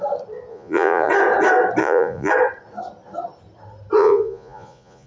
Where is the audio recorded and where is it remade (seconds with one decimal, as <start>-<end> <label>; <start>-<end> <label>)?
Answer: 0.0-0.5 recorded; 0.5-1.1 remade; 1.1-1.8 recorded; 1.8-2.3 remade; 2.3-4.0 recorded; 4.0-5.1 remade